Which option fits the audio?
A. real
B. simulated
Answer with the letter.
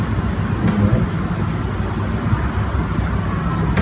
A